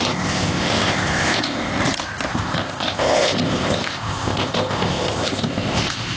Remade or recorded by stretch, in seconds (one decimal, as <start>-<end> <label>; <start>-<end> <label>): 0.0-1.7 remade; 1.7-2.3 recorded; 2.3-6.2 remade